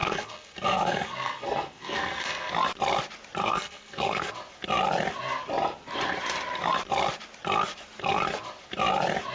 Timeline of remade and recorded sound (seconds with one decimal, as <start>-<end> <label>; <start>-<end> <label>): 0.0-2.5 remade; 2.5-3.4 recorded; 3.4-4.3 remade; 4.3-9.3 recorded